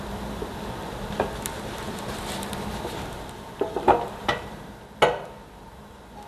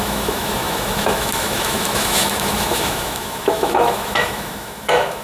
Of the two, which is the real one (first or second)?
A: first